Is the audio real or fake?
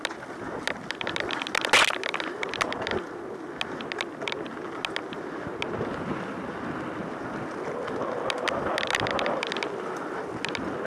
real